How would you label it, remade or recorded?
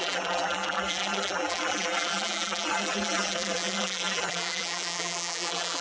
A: remade